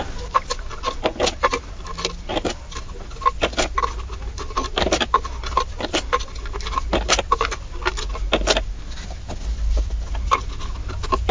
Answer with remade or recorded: recorded